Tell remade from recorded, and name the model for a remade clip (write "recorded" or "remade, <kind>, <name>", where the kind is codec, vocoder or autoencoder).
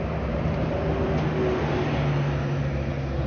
recorded